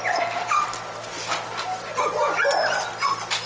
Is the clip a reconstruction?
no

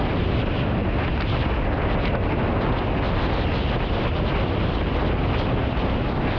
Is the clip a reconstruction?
no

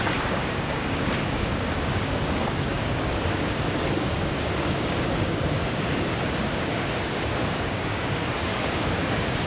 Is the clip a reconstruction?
yes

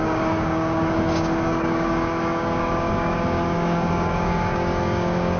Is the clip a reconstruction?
yes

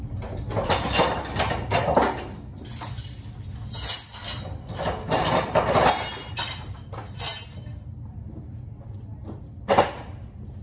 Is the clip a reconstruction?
no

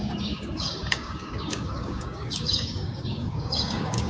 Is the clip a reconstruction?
yes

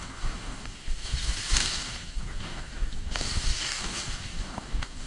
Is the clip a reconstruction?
yes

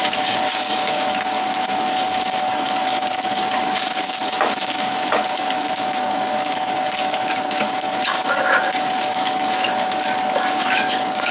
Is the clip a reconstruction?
yes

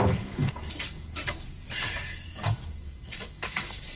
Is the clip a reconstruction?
yes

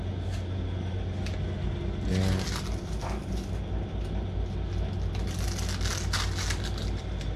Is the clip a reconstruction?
no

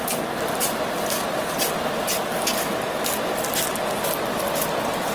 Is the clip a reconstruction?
no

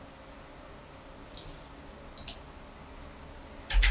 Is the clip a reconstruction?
no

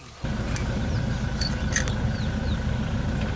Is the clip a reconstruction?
no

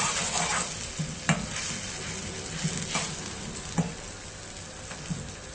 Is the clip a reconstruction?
no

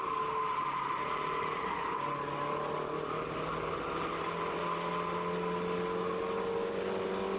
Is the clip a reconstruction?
no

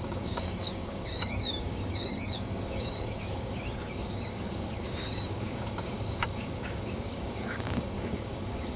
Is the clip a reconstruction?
yes